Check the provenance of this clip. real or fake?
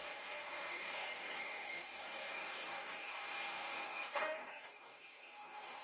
fake